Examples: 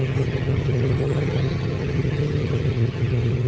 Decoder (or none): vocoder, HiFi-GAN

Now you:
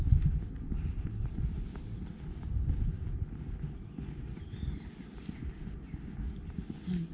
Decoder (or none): none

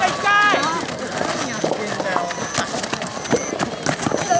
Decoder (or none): none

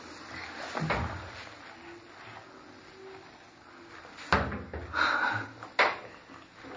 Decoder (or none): none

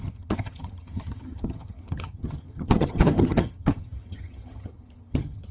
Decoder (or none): vocoder, HiFi-GAN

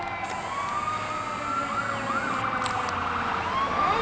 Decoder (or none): none